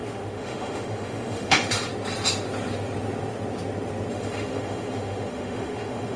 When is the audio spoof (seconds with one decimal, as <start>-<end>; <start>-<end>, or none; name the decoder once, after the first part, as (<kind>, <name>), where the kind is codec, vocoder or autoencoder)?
0.0-1.9 (autoencoder, DAC-VAE); 4.1-6.2